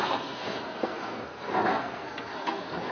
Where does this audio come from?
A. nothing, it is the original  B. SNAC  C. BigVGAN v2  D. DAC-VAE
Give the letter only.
B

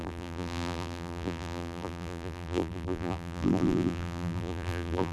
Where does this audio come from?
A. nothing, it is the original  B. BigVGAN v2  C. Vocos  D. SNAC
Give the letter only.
B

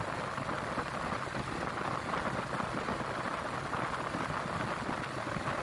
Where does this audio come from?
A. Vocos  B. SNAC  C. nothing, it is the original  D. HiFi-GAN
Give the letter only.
C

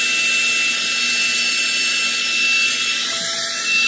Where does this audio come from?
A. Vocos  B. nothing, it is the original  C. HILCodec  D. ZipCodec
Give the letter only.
B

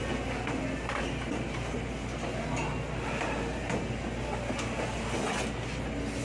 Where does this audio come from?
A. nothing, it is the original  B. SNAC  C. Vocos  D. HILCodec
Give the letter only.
A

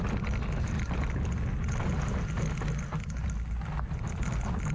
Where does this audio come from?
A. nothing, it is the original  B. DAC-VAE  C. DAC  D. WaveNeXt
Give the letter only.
A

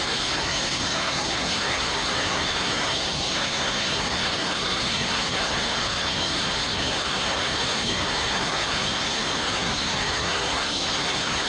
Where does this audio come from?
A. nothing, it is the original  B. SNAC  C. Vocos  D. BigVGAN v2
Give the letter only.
B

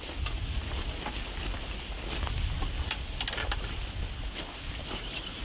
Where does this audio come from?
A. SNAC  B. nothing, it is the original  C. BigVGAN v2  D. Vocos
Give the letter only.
B